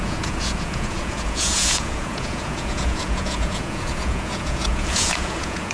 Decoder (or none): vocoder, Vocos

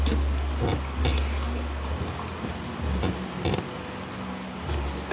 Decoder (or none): none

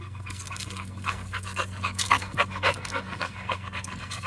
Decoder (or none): codec, SNAC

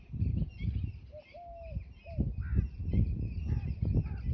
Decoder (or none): none